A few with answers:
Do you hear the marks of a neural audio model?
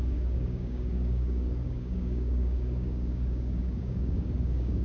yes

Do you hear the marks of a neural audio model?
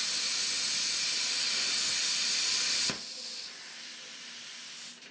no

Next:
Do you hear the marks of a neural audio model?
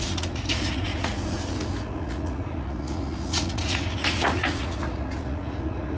yes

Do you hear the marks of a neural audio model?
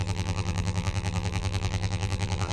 yes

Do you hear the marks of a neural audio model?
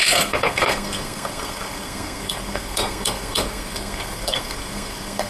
yes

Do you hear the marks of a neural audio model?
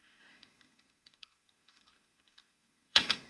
yes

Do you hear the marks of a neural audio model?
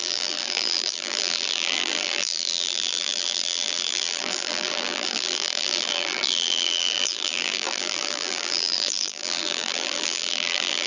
yes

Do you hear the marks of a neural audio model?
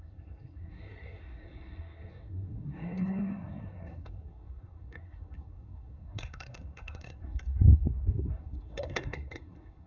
yes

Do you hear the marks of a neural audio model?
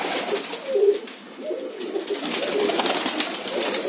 yes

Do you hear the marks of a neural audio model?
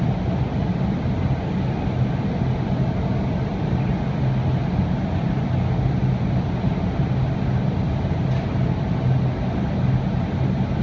no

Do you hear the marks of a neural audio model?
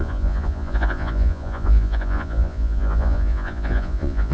yes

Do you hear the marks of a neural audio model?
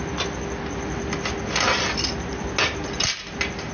no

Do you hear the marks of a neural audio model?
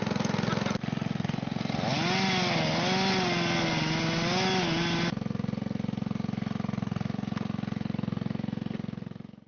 no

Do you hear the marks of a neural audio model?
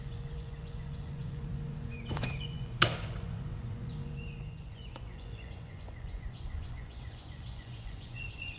yes